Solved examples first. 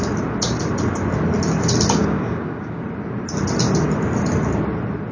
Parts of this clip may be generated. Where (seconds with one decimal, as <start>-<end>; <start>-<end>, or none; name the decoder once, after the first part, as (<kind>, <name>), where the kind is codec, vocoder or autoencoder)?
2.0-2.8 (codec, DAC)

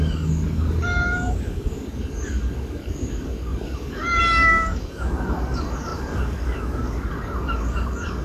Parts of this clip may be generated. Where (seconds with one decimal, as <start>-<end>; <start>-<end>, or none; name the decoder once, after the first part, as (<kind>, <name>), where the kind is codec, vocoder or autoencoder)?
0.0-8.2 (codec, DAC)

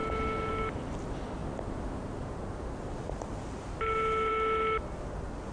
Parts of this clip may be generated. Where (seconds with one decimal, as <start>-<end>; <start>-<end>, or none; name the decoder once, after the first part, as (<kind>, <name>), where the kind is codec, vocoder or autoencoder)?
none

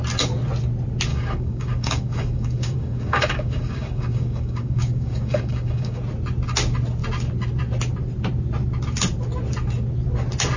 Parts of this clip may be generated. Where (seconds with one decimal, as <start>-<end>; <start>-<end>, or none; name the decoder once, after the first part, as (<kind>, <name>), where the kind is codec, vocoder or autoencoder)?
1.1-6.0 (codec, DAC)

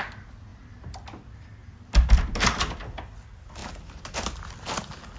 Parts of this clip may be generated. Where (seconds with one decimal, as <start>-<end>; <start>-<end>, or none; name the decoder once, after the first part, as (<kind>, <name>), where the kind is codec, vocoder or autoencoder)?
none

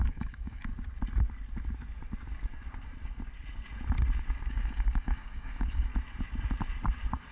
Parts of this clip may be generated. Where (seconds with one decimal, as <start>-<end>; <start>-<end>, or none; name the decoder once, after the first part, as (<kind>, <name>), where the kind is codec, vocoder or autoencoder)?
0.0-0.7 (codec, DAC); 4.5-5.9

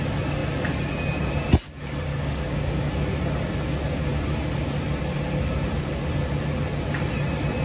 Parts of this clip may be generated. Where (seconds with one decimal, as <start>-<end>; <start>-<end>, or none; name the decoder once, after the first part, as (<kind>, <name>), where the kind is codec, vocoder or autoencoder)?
2.1-2.9 (codec, DAC)